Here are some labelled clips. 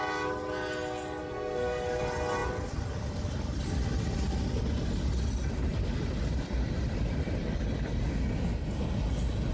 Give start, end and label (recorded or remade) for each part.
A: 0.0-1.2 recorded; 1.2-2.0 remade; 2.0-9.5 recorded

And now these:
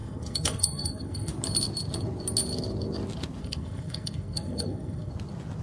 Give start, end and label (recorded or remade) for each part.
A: 0.0-1.3 remade; 1.3-3.4 recorded; 3.4-5.1 remade; 5.1-5.6 recorded

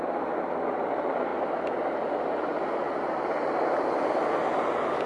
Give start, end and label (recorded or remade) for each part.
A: 0.0-5.1 recorded